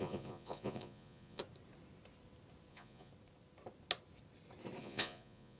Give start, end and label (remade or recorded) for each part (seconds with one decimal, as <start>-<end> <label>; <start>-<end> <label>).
0.0-1.4 remade; 1.4-2.7 recorded; 2.7-3.1 remade; 3.1-4.8 recorded; 4.8-5.6 remade